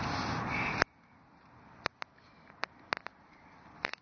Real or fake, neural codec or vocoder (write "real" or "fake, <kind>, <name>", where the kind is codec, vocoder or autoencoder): real